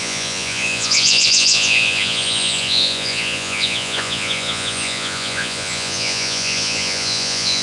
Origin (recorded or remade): remade